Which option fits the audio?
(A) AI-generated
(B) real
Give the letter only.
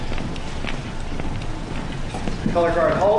B